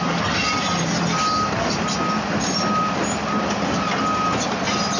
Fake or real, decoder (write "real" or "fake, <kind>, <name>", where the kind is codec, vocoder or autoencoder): real